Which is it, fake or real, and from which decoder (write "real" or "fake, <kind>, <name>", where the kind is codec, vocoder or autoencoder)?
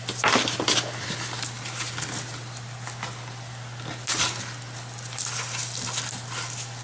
real